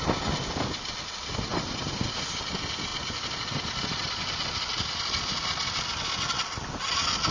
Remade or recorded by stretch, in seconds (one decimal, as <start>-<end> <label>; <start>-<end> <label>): 0.0-7.3 recorded